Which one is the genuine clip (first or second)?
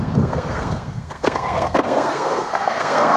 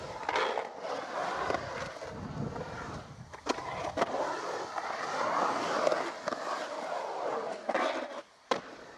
second